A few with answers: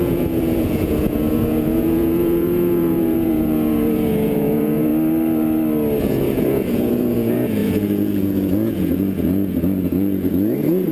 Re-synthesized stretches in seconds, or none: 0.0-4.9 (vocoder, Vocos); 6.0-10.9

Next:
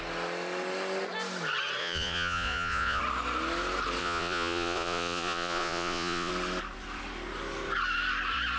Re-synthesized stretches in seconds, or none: 1.8-3.0 (vocoder, Vocos); 4.0-6.3

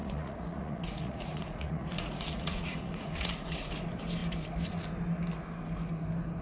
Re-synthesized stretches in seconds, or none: 0.0-3.8 (vocoder, Vocos)